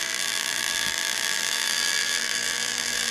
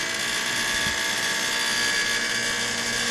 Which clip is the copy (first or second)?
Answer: first